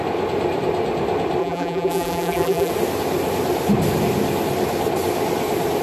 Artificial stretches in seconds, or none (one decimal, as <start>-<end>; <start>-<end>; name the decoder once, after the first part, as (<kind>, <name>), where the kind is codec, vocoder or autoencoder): 1.4-2.7 (vocoder, BigVGAN v2)